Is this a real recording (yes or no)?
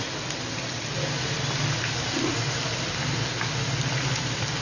yes